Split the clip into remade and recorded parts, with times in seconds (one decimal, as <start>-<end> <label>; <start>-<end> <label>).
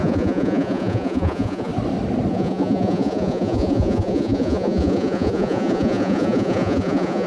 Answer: 0.0-1.7 remade; 1.7-2.3 recorded; 2.3-7.3 remade